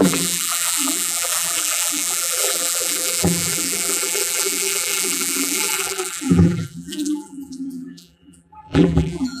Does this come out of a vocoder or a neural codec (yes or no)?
yes